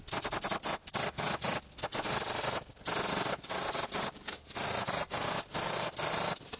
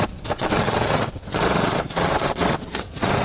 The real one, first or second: first